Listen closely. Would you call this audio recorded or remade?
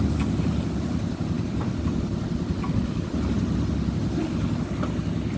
recorded